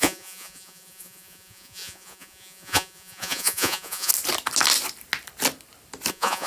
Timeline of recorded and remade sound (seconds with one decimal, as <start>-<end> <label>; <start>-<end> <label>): 0.0-4.1 remade; 4.1-6.1 recorded; 6.1-6.5 remade